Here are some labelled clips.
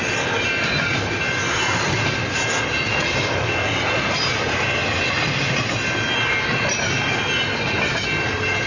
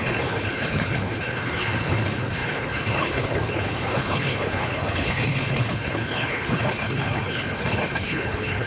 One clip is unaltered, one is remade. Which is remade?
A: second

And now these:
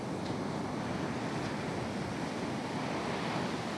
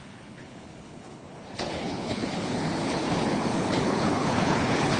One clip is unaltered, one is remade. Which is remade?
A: second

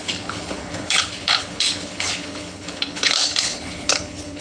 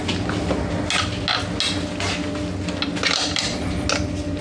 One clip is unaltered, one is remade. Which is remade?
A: first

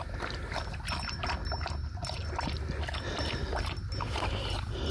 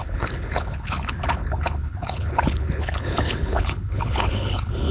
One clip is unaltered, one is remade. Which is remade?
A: second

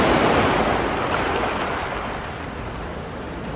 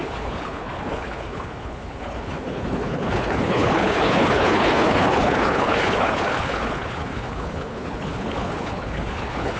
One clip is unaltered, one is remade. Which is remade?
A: second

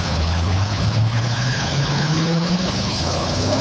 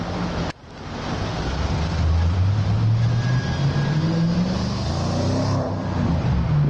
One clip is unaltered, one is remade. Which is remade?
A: first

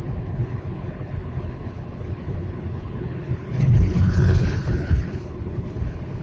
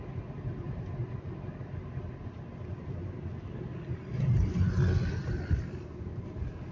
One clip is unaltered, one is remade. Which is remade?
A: first